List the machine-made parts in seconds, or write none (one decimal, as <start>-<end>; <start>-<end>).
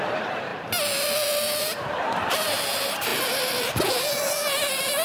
0.0-0.5; 1.6-5.0